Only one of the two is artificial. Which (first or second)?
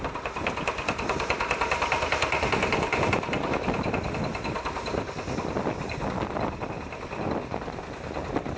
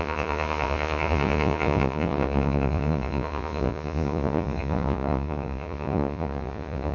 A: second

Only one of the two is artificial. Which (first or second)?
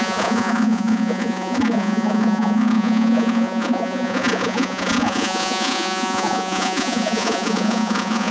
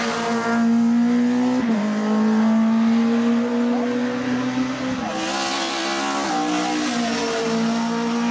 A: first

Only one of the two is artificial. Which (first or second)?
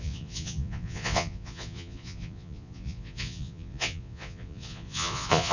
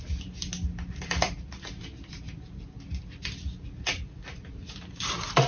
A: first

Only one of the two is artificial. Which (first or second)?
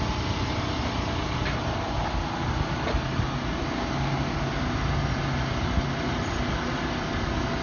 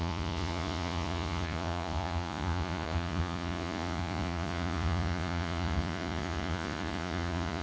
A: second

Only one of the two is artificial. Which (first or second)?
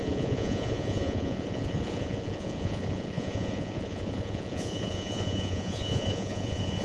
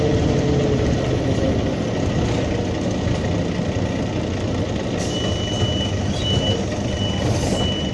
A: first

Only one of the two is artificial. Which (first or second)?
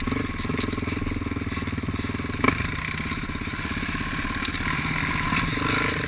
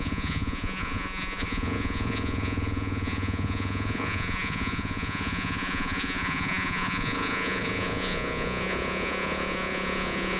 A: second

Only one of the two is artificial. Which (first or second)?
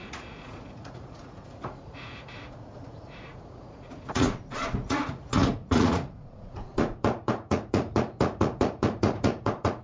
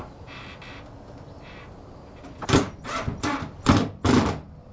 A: first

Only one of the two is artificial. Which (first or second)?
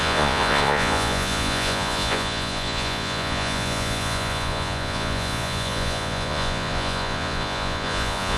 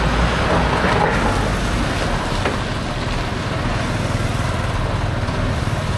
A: first